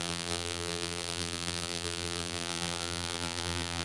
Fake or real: fake